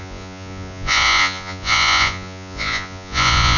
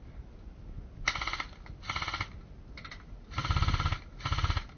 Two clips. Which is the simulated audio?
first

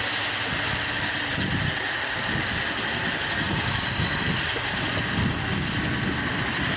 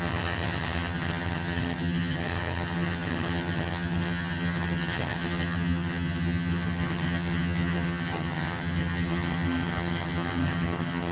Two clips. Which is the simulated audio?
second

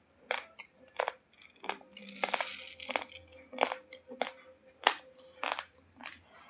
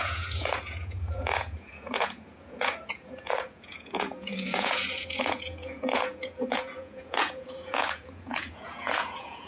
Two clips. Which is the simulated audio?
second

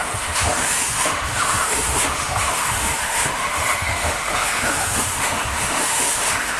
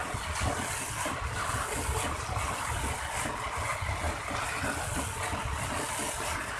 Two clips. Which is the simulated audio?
first